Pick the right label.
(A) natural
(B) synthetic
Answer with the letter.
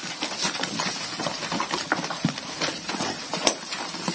A